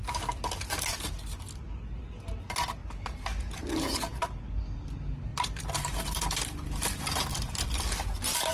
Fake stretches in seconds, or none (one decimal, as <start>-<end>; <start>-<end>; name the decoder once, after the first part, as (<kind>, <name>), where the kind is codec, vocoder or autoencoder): none